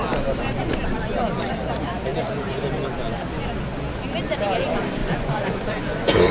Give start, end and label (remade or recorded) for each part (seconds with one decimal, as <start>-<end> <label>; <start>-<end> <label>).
0.0-5.0 recorded; 5.0-6.3 remade